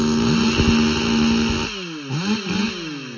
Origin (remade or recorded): recorded